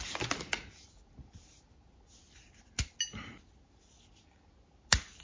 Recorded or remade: recorded